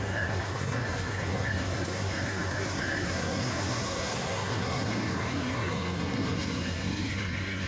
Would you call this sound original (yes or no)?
no